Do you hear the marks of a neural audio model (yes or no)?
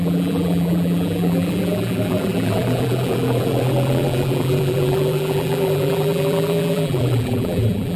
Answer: yes